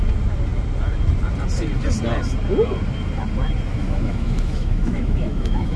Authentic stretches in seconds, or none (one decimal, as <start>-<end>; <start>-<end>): 0.0-3.7